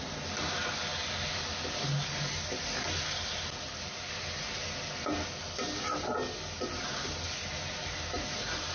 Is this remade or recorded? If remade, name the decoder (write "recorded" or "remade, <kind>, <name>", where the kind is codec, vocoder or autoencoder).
recorded